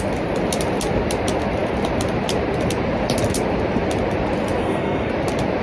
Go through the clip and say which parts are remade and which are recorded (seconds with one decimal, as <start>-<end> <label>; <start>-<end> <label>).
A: 0.0-4.6 recorded; 4.6-5.1 remade; 5.1-5.6 recorded